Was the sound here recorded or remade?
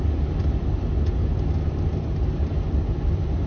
recorded